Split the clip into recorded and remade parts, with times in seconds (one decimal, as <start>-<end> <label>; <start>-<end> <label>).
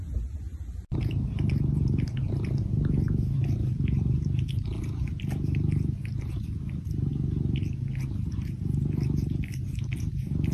0.0-10.5 recorded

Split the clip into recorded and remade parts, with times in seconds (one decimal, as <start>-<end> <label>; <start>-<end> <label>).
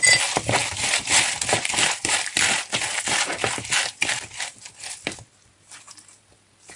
0.0-6.8 recorded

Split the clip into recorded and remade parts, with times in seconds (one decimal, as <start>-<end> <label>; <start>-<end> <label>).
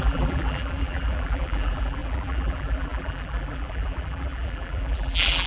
0.0-5.5 remade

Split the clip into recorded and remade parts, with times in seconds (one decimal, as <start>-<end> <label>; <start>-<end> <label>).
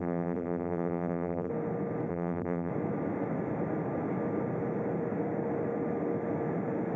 0.0-1.5 remade; 1.5-2.1 recorded; 2.1-2.7 remade; 2.7-7.0 recorded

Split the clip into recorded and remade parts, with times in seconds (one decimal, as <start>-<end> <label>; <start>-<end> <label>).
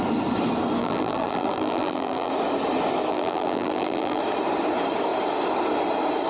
0.0-0.8 recorded; 0.8-2.3 remade; 2.3-3.1 recorded; 3.1-4.2 remade; 4.2-6.3 recorded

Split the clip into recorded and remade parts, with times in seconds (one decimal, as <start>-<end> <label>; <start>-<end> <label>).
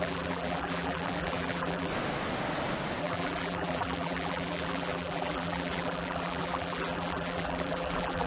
0.0-1.9 remade; 1.9-3.0 recorded; 3.0-8.3 remade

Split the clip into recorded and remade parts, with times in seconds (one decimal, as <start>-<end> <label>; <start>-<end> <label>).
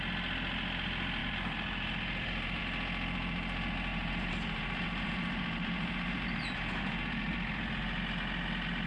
0.0-1.2 recorded; 1.2-2.6 remade; 2.6-3.9 recorded; 3.9-8.0 remade; 8.0-8.9 recorded